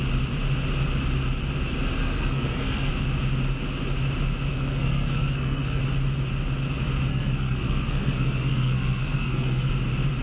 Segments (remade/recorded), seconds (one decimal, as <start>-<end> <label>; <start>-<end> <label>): 0.0-2.0 recorded; 2.0-2.9 remade; 2.9-4.5 recorded; 4.5-5.8 remade; 5.8-7.1 recorded; 7.1-9.7 remade; 9.7-10.2 recorded